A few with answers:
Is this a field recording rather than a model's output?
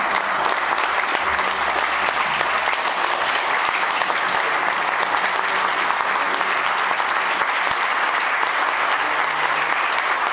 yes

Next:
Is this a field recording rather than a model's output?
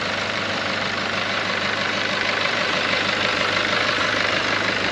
no